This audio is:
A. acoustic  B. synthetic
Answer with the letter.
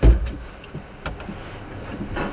A